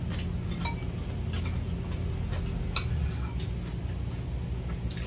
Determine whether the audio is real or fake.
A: real